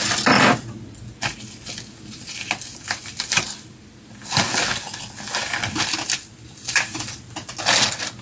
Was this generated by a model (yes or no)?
no